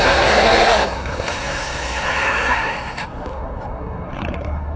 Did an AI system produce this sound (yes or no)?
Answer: yes